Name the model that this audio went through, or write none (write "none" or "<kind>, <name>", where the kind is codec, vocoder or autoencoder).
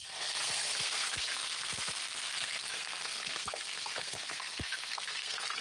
codec, SNAC